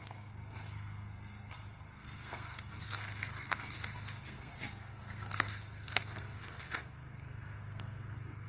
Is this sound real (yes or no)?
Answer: no